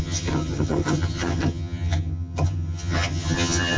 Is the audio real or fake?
fake